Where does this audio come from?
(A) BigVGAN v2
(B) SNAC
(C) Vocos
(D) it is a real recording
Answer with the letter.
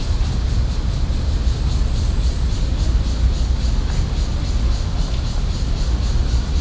D